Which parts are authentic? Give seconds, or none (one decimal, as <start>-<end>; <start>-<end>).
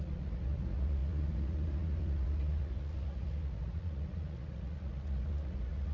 none